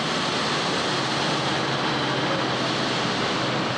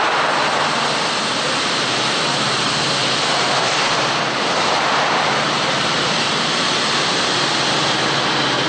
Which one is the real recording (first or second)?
first